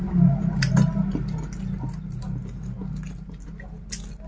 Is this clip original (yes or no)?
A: yes